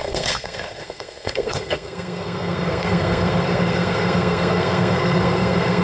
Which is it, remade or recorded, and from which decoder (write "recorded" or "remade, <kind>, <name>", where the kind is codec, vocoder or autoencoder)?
remade, codec, SNAC